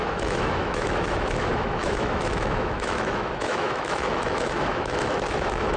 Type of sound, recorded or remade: remade